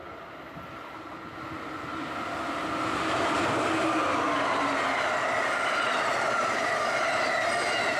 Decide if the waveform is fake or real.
real